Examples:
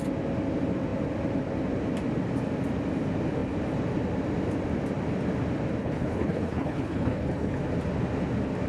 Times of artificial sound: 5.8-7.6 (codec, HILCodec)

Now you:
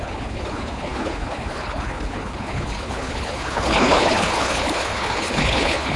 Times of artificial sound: 0.0-6.0 (codec, HILCodec)

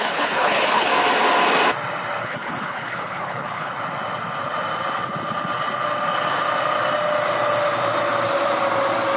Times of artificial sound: 0.0-0.9 (codec, HILCodec); 2.2-3.7

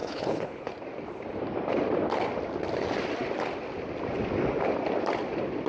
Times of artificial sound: 0.0-0.7 (codec, HILCodec)